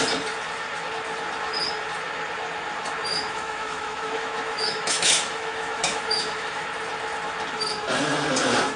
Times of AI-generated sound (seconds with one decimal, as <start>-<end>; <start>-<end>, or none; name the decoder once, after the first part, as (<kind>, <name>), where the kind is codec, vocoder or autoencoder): 3.1-6.6 (autoencoder, DAC-VAE)